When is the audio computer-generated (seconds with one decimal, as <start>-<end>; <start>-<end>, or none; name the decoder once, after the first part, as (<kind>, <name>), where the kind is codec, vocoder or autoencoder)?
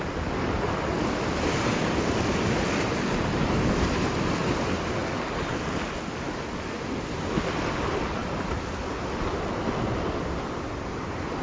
1.8-2.4 (vocoder, BigVGAN v2)